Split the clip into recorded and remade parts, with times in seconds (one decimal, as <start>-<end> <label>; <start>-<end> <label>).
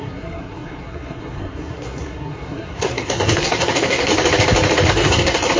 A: 0.0-4.1 remade; 4.1-4.9 recorded; 4.9-5.6 remade